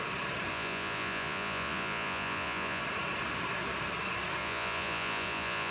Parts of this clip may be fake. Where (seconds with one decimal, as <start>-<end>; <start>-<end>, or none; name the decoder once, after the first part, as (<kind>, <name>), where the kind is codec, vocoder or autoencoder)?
0.5-2.8 (vocoder, Vocos); 4.4-5.7